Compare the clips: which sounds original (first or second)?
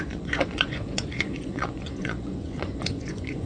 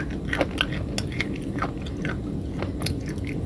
second